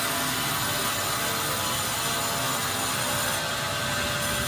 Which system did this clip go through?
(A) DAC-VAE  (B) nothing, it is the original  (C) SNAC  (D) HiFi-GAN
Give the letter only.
B